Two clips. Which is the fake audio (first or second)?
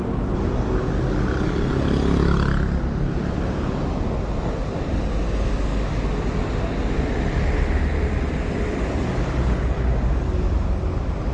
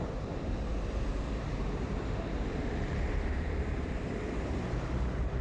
second